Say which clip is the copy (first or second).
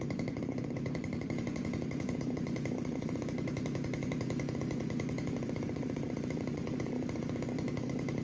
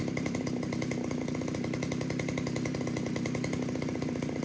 first